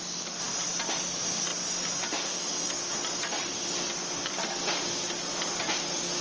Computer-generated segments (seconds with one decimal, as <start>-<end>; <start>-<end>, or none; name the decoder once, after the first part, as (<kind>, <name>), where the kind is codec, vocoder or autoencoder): none